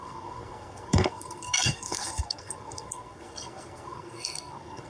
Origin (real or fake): fake